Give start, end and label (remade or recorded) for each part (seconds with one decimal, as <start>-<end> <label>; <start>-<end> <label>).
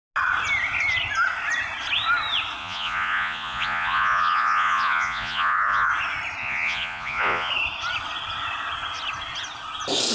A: 0.0-2.6 recorded; 2.6-5.9 remade; 5.9-6.4 recorded; 6.4-7.5 remade; 7.5-10.1 recorded